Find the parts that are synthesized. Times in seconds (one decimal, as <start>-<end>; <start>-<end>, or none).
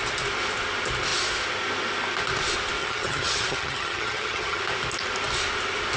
2.8-4.6